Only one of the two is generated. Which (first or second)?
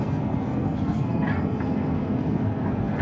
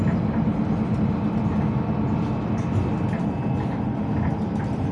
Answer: first